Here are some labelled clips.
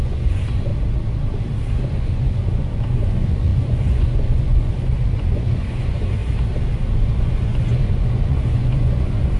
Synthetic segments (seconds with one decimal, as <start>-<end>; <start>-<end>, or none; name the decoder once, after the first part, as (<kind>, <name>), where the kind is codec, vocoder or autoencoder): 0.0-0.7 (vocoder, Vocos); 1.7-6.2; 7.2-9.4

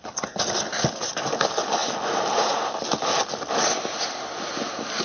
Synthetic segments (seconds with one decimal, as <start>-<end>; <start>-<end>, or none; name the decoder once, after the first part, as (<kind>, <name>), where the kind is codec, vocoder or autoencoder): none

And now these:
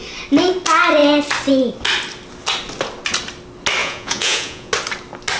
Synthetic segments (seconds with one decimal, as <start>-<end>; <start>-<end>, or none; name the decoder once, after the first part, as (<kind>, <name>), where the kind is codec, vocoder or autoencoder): 3.8-4.7 (vocoder, Vocos)

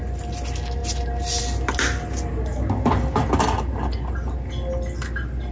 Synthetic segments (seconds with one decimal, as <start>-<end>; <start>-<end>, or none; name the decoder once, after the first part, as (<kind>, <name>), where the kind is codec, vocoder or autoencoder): none

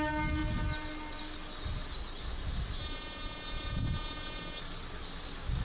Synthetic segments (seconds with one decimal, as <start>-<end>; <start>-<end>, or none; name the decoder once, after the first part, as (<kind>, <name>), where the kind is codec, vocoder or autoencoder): 2.8-4.6 (vocoder, Vocos)

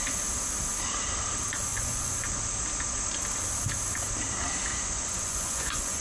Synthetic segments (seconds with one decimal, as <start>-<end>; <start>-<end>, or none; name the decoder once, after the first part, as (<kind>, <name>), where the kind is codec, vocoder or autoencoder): 1.7-2.4 (vocoder, Vocos); 4.7-6.0

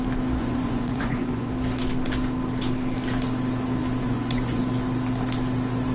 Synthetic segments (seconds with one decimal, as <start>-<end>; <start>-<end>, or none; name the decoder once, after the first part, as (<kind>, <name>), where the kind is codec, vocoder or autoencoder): 0.4-1.5 (vocoder, Vocos); 4.0-4.6